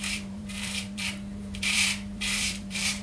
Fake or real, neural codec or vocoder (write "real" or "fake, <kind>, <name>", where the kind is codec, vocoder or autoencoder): fake, vocoder, BigVGAN v2